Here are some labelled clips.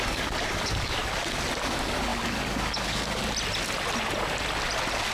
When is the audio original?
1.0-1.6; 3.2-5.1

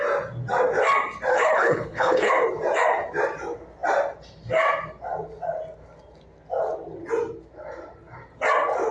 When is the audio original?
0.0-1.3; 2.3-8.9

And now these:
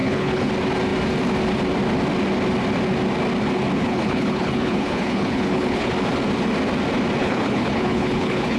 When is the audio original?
0.5-3.8; 5.9-7.2

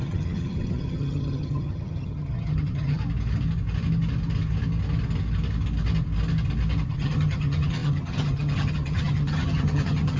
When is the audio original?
3.0-6.9

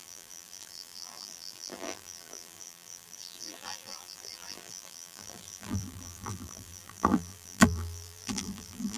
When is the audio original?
none